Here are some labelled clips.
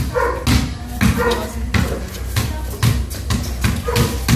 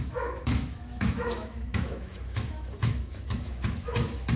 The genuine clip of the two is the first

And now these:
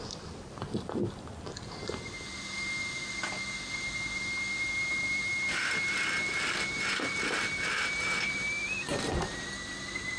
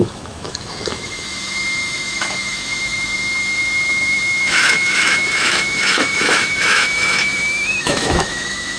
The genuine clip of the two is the first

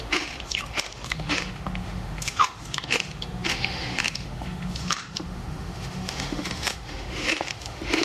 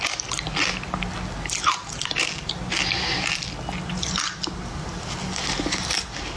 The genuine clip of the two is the second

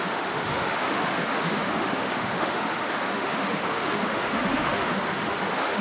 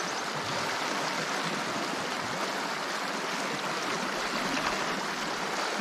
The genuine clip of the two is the second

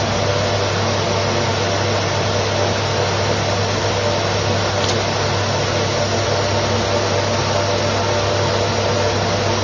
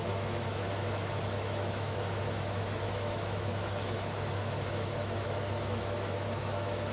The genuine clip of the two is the first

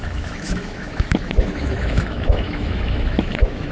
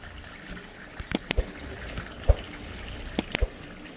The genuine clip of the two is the second